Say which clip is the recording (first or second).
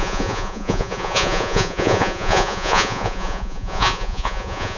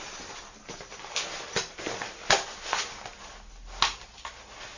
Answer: second